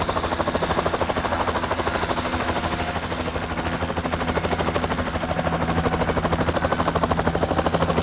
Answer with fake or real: real